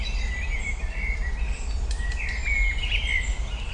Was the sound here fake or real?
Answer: real